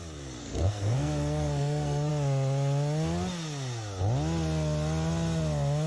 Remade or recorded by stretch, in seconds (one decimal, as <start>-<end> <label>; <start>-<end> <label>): 0.0-0.4 recorded; 0.4-2.1 remade; 2.1-5.9 recorded